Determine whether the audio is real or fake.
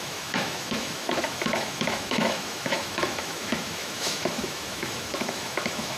fake